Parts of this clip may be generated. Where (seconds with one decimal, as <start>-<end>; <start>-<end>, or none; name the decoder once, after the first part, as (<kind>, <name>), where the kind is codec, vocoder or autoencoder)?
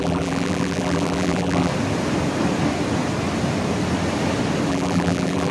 0.0-1.7 (vocoder, BigVGAN v2); 4.7-5.5